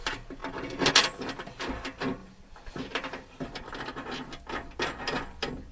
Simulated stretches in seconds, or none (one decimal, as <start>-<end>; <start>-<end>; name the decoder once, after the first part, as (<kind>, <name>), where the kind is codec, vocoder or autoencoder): 0.4-1.5 (vocoder, BigVGAN v2); 2.2-3.7